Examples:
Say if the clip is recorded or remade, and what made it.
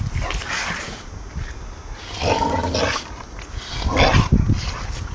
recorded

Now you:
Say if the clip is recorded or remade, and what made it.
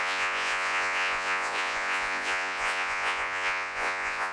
remade, vocoder, Vocos